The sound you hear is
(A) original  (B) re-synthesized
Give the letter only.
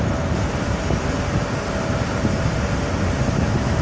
A